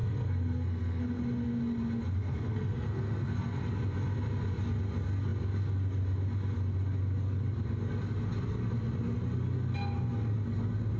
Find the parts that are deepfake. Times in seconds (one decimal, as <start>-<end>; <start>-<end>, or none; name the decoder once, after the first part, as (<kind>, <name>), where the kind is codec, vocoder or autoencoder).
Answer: 0.0-1.0 (codec, SNAC); 2.0-3.5

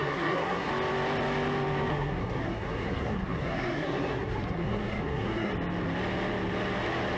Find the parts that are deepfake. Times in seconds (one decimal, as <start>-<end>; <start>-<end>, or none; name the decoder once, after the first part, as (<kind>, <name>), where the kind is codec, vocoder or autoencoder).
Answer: 0.0-0.7 (codec, SNAC); 1.9-5.5